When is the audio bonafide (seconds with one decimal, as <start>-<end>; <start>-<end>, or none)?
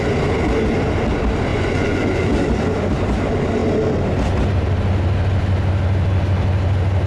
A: 0.0-1.5; 2.3-7.1